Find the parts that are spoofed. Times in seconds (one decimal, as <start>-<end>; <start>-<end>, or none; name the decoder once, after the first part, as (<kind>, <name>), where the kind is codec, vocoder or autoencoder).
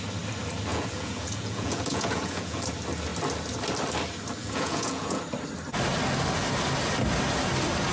0.7-2.6 (vocoder, Vocos); 4.4-5.2